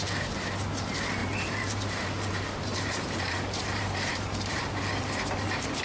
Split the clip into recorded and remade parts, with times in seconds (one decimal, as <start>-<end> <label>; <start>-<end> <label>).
0.0-1.2 recorded; 1.2-2.0 remade; 2.0-2.7 recorded; 2.7-4.7 remade; 4.7-5.8 recorded